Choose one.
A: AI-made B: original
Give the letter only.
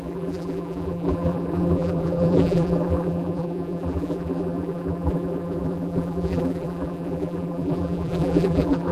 A